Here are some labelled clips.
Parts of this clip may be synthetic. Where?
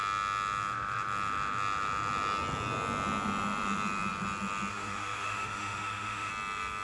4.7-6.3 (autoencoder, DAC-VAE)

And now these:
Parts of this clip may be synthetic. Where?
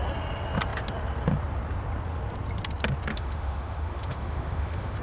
3.1-5.0 (autoencoder, DAC-VAE)